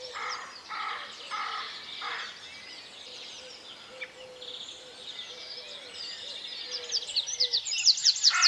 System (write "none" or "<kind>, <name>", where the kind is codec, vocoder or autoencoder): none